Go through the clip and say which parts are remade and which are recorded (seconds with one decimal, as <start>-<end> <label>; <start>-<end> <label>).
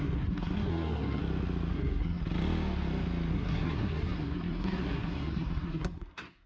0.0-1.2 remade; 1.2-1.7 recorded; 1.7-2.2 remade; 2.2-3.3 recorded; 3.3-6.5 remade